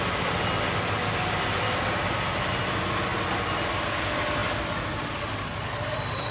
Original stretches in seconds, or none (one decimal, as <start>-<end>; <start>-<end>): 0.0-6.3